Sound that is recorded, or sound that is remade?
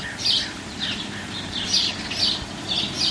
recorded